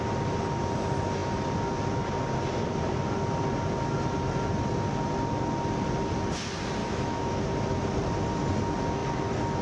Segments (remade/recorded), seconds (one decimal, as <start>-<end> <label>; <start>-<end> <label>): 0.0-6.8 recorded; 6.8-7.4 remade; 7.4-9.6 recorded